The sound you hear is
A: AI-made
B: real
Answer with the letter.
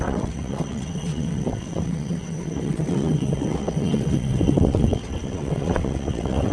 A